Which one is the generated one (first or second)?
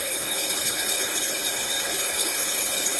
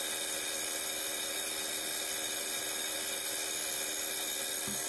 first